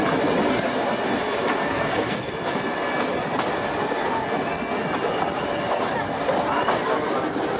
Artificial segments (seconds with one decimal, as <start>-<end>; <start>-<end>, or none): 1.6-2.3